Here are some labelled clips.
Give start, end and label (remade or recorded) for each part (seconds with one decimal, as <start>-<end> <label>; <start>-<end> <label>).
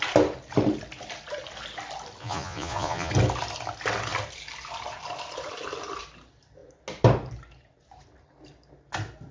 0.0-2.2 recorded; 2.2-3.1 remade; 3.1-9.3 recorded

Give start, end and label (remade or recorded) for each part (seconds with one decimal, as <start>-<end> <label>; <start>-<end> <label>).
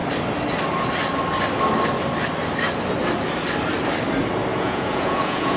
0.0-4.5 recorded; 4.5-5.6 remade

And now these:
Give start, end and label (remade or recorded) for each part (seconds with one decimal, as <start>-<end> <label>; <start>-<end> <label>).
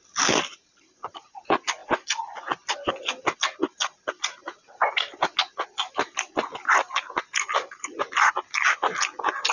0.0-9.5 recorded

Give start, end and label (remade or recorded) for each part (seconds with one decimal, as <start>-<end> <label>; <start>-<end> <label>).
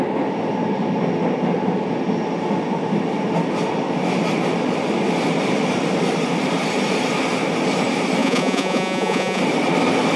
0.0-8.2 recorded; 8.2-9.4 remade; 9.4-10.2 recorded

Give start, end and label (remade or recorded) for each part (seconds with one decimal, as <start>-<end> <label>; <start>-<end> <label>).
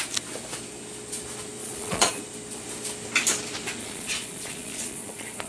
0.0-1.6 recorded; 1.6-2.2 remade; 2.2-3.8 recorded; 3.8-5.5 remade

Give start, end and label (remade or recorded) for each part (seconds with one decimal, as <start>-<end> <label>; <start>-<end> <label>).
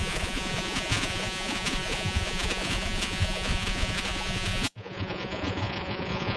0.0-6.4 remade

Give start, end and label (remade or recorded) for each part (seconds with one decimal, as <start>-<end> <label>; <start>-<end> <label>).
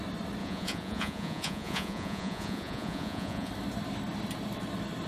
0.0-0.4 recorded; 0.4-3.5 remade; 3.5-5.1 recorded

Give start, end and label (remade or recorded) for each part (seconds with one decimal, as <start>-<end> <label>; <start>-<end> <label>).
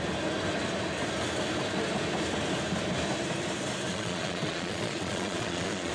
0.0-3.9 recorded; 3.9-5.9 remade